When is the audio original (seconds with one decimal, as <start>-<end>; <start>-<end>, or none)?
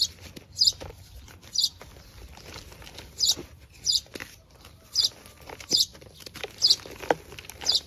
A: 0.0-7.9